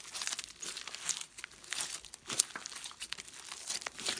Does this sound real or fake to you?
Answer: real